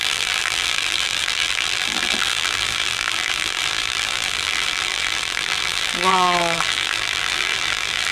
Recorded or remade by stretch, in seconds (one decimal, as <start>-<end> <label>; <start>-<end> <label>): 0.0-8.1 remade